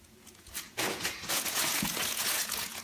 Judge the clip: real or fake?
fake